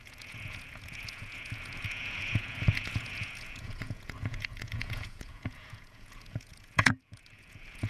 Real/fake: fake